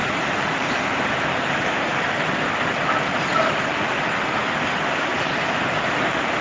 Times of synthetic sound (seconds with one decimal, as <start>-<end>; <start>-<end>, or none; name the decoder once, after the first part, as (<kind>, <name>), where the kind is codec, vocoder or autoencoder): none